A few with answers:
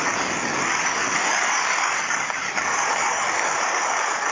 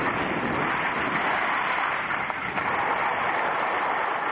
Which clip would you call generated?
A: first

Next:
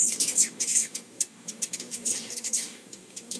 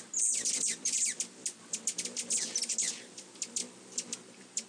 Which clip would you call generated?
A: first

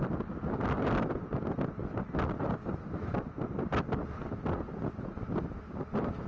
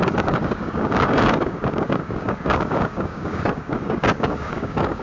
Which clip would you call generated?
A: second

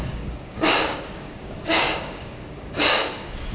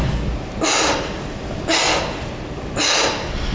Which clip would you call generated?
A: first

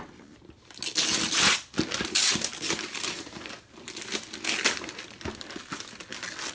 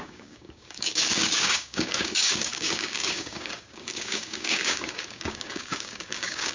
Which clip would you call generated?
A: second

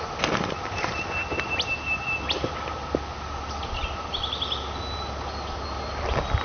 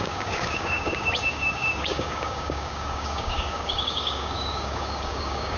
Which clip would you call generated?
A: second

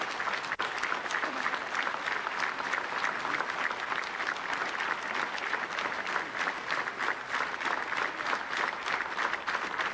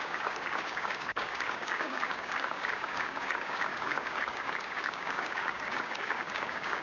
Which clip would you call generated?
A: second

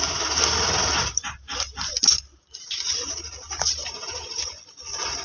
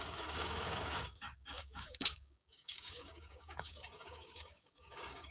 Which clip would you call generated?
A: second